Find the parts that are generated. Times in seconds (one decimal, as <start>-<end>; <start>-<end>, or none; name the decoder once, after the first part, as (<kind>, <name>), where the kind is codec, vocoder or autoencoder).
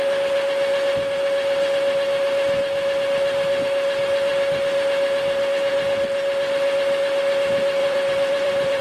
7.8-8.8 (vocoder, BigVGAN v2)